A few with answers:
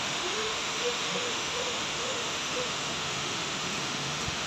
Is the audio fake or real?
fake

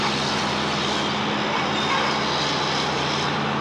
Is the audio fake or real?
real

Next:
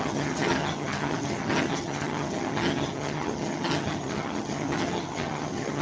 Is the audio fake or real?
fake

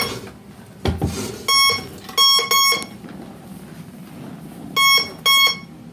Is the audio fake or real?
real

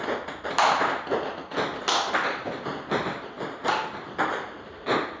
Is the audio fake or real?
real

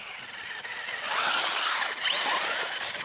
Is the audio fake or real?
real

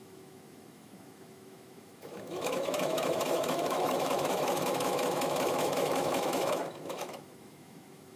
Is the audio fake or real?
fake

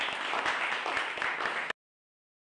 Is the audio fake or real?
real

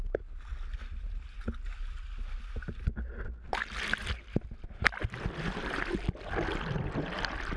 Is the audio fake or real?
real